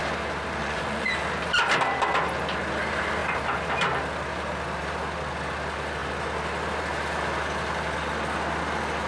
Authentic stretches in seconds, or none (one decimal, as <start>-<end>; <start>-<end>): 0.0-0.6; 1.1-9.1